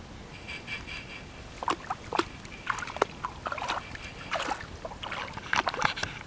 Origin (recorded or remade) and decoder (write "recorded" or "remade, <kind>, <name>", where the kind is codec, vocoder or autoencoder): recorded